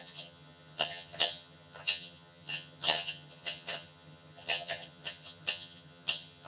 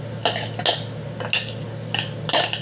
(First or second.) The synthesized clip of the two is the first